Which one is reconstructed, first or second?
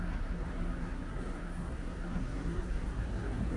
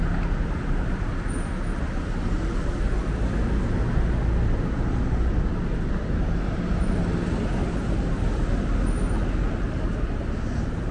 first